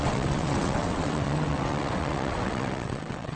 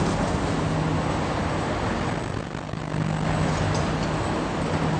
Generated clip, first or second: first